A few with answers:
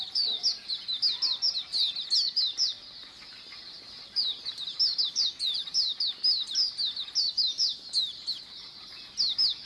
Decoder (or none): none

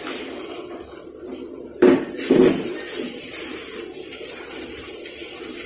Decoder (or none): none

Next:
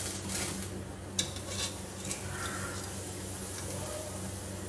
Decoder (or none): none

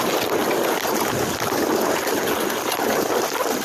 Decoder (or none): none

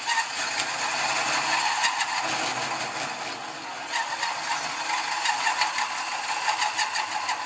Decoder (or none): none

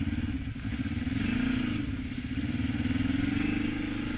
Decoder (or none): none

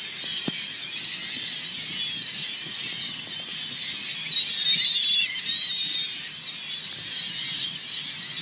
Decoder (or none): none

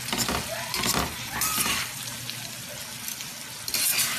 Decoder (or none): none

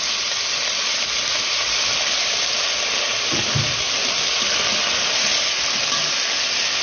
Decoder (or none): none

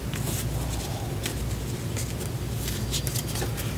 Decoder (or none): none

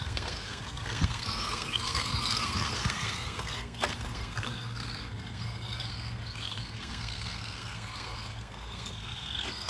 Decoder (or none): codec, SNAC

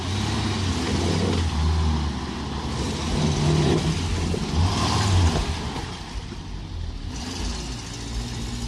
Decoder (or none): none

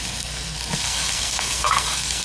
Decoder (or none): codec, SNAC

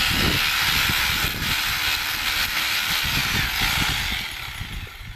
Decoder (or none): none